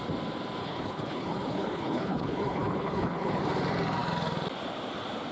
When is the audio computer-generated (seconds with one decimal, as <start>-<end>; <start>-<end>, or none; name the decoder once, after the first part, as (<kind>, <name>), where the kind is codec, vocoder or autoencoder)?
0.6-3.4 (codec, HILCodec)